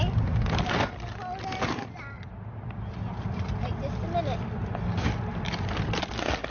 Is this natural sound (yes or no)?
yes